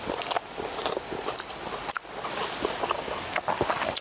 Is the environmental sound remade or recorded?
recorded